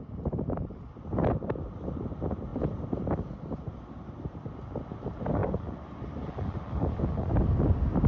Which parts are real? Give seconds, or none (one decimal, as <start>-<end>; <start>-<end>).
0.0-8.1